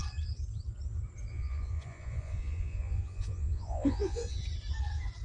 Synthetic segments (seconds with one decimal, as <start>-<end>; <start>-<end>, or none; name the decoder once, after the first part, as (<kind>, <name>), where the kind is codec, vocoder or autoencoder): 1.3-4.4 (vocoder, Vocos)